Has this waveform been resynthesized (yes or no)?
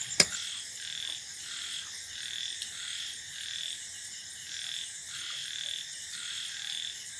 no